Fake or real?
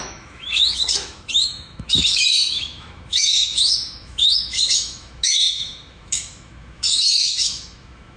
fake